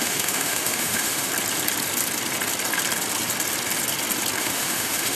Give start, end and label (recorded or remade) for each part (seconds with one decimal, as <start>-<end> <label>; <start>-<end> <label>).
0.0-1.3 remade; 1.3-4.4 recorded; 4.4-5.1 remade